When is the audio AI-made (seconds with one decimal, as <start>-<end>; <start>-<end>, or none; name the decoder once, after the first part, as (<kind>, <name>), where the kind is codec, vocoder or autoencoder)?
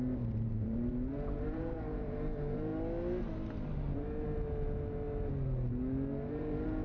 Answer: 0.0-2.7 (vocoder, BigVGAN v2); 6.3-6.8